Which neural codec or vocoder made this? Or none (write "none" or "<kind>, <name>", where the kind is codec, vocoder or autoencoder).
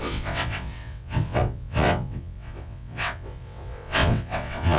vocoder, WaveNeXt